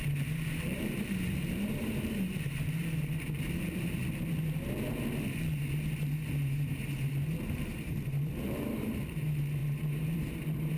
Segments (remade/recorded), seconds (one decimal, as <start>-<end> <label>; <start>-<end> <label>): 0.0-4.0 remade; 4.0-6.3 recorded; 6.3-10.8 remade